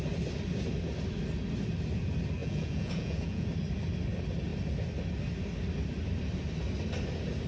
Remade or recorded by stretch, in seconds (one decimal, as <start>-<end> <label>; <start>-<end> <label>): 0.0-2.4 recorded; 2.4-3.5 remade; 3.5-7.5 recorded